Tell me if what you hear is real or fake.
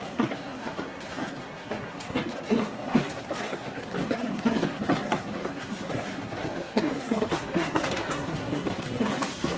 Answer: fake